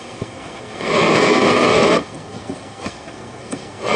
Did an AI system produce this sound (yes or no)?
yes